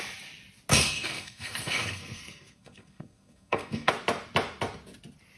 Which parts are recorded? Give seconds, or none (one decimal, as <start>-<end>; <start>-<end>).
0.0-0.7; 3.9-5.4